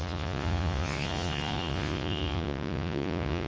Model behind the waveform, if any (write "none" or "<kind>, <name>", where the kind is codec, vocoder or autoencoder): vocoder, Vocos